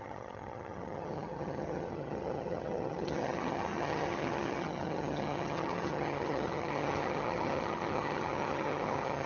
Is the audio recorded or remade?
remade